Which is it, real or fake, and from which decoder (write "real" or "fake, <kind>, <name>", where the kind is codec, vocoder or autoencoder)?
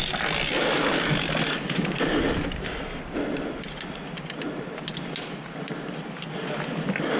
real